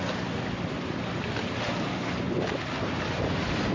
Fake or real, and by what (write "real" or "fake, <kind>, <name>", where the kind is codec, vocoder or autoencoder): real